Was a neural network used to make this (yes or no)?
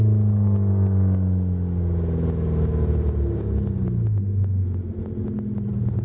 no